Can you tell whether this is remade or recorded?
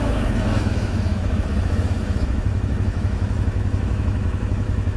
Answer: remade